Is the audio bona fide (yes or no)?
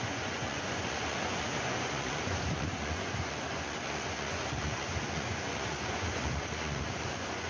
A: no